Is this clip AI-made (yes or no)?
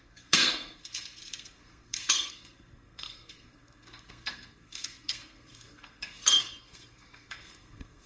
yes